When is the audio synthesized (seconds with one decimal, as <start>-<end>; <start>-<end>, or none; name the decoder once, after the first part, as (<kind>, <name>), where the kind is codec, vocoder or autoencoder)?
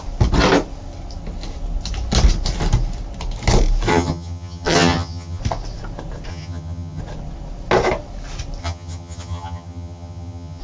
3.9-5.4 (vocoder, HiFi-GAN); 6.3-7.0; 8.6-10.6